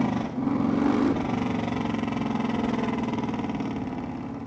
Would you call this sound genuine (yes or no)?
yes